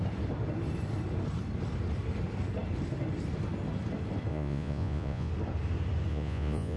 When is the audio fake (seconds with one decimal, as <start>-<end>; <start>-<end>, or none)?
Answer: 4.3-5.3; 6.1-6.8

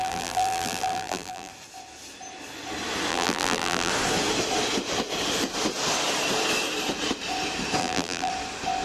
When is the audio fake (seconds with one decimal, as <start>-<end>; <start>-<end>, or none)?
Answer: 0.0-1.5; 3.1-3.9; 7.8-8.3

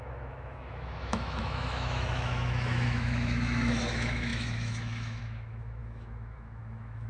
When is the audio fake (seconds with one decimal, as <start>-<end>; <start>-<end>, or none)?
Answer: 0.0-7.1

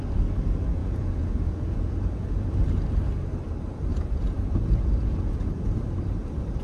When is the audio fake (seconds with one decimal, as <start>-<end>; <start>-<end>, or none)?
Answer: 0.8-2.7; 3.9-5.6